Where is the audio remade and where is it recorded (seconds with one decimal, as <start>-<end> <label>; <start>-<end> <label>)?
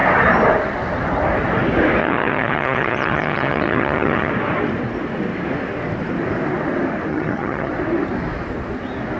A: 0.0-2.0 recorded; 2.0-4.3 remade; 4.3-7.1 recorded; 7.1-7.7 remade; 7.7-9.2 recorded